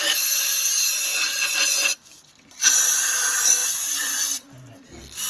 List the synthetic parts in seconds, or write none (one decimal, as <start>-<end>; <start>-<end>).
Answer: 1.1-2.2; 3.6-4.2